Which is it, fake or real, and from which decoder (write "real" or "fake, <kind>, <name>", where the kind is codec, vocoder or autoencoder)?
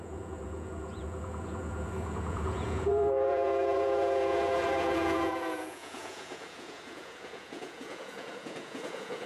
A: fake, vocoder, Vocos